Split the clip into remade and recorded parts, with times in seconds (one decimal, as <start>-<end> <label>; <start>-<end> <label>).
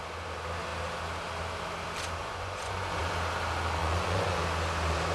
0.0-2.2 recorded; 2.2-3.0 remade; 3.0-3.8 recorded; 3.8-4.4 remade; 4.4-5.1 recorded